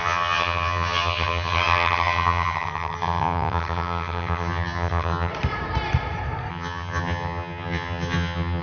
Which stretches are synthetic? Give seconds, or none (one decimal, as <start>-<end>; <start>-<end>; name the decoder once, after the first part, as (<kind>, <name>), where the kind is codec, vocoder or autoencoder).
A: 0.0-5.3 (vocoder, HiFi-GAN); 6.5-8.6